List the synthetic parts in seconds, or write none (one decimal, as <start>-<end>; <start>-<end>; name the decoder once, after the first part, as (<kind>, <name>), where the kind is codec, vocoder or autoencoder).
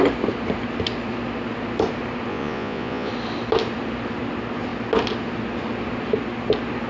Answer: 2.3-3.1 (vocoder, Vocos)